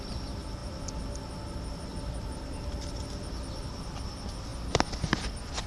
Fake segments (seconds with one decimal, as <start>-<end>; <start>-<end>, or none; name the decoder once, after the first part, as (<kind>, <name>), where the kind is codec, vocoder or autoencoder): none